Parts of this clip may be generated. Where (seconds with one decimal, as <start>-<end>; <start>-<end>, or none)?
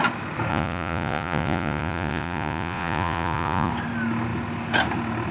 0.5-3.7